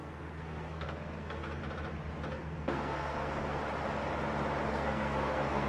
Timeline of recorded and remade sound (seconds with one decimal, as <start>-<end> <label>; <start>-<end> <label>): 0.0-1.6 remade; 1.6-2.3 recorded; 2.3-3.6 remade; 3.6-4.7 recorded; 4.7-5.7 remade